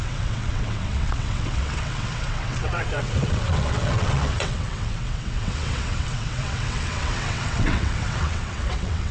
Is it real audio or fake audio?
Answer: fake